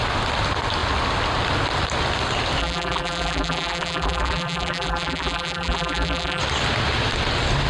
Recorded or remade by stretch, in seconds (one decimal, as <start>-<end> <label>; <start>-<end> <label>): 0.0-2.6 recorded; 2.6-6.4 remade; 6.4-7.7 recorded